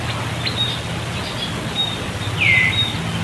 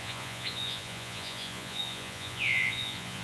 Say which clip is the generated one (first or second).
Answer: second